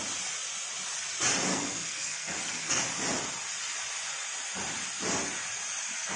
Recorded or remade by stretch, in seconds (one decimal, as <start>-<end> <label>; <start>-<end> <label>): 0.0-1.5 recorded; 1.5-2.8 remade; 2.8-6.2 recorded

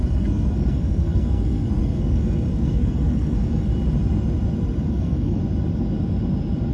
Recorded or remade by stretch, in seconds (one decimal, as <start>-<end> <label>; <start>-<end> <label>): 0.0-3.7 remade; 3.7-4.9 recorded; 4.9-5.4 remade; 5.4-6.7 recorded

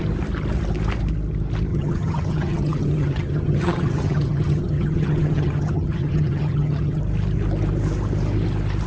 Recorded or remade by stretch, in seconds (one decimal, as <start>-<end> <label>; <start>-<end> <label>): 0.0-1.7 recorded; 1.7-7.0 remade; 7.0-8.9 recorded

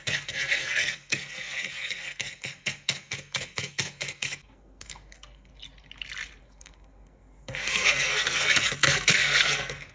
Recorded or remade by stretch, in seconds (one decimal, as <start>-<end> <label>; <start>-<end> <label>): 0.0-5.5 remade; 5.5-6.4 recorded; 6.4-9.9 remade

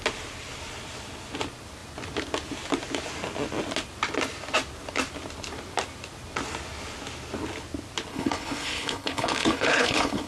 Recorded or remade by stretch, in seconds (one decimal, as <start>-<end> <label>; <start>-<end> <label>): 0.0-8.1 recorded; 8.1-10.3 remade

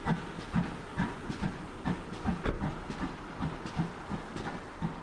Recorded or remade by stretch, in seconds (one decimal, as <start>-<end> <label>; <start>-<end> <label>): 0.0-0.9 recorded; 0.9-1.7 remade; 1.7-5.0 recorded

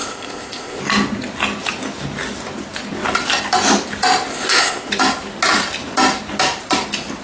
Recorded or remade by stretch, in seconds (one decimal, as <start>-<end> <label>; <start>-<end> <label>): 0.0-0.8 remade; 0.8-4.3 recorded; 4.3-4.9 remade; 4.9-7.2 recorded